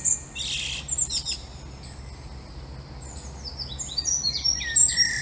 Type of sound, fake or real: real